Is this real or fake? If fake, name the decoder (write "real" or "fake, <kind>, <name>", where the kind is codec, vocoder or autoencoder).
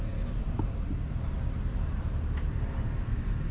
real